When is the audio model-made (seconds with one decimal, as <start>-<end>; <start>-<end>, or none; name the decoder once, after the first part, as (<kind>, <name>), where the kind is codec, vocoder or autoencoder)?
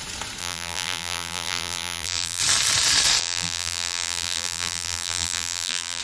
0.4-2.4 (vocoder, BigVGAN v2); 3.2-6.0